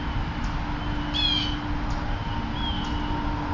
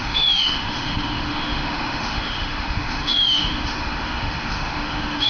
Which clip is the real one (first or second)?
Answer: first